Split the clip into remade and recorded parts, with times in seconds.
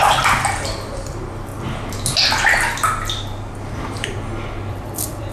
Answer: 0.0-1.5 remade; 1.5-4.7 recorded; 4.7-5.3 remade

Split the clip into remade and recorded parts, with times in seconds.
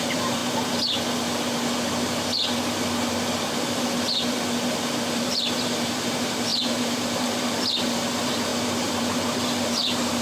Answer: 0.0-0.4 remade; 0.4-5.1 recorded; 5.1-10.2 remade